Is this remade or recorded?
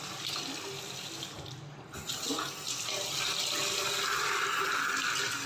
recorded